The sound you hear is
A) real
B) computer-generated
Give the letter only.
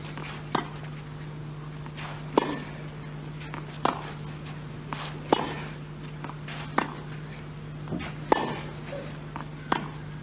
A